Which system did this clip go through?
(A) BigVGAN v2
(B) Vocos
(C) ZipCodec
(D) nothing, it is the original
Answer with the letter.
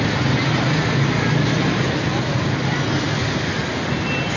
D